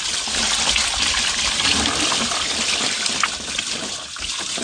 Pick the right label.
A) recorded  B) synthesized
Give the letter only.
A